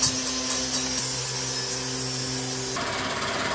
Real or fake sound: real